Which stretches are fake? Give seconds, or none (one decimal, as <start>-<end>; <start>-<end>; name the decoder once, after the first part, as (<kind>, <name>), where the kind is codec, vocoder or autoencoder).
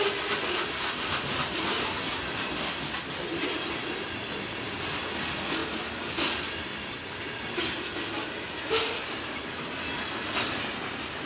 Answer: none